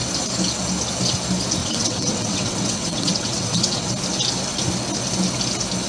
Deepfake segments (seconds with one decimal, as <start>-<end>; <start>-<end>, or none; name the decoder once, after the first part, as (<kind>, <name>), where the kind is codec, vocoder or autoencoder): 1.6-3.9 (vocoder, WaveNeXt)